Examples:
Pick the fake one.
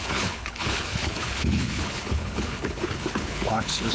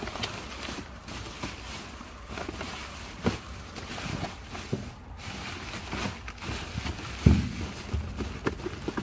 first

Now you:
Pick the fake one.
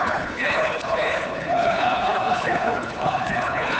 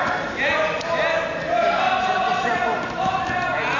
first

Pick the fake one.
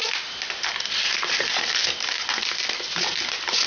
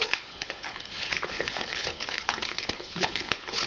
second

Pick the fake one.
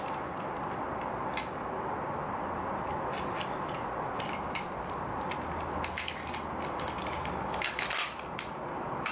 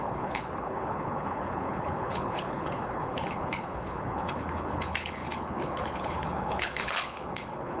second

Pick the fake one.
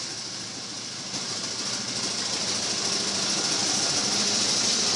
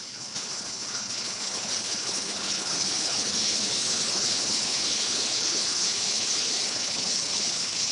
second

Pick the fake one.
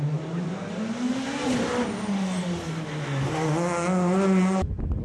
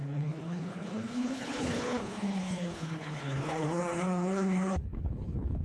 second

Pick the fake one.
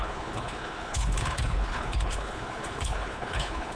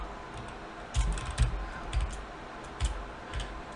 first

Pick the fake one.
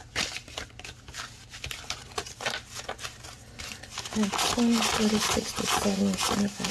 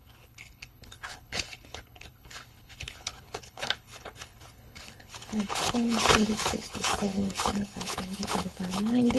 second